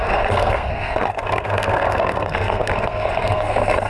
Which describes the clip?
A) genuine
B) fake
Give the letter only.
B